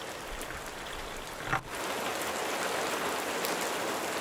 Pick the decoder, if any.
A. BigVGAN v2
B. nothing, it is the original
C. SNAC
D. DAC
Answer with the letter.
B